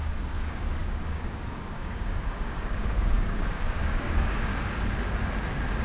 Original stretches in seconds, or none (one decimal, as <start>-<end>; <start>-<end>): 4.5-5.8